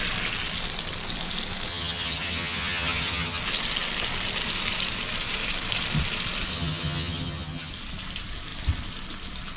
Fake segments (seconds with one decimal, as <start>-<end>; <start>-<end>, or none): 1.7-3.4; 6.5-7.7